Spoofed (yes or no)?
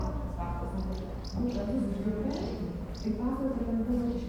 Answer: no